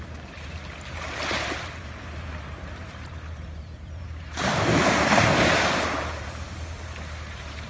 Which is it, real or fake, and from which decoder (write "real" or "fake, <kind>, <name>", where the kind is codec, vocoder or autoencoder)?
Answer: fake, vocoder, BigVGAN v2